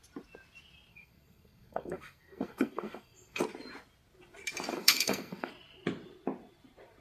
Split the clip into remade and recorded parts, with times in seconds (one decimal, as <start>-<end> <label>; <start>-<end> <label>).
0.0-0.9 recorded; 0.9-3.4 remade; 3.4-4.7 recorded; 4.7-5.5 remade; 5.5-7.0 recorded